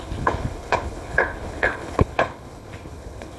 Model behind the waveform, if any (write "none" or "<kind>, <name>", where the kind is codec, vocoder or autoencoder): codec, HILCodec